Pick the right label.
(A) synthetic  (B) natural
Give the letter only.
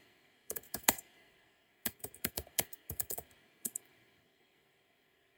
A